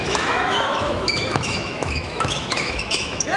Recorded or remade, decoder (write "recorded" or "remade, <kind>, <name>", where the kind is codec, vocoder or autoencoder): remade, autoencoder, DAC-VAE